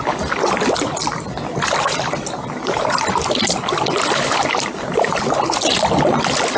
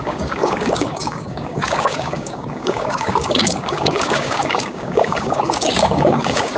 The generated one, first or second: second